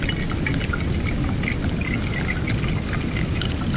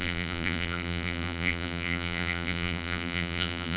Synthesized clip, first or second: second